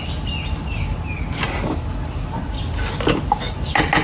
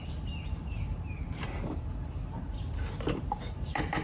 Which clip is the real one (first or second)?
first